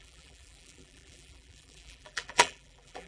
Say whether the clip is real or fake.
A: fake